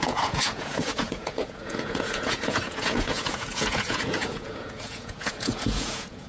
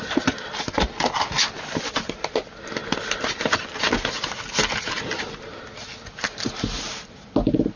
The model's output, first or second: first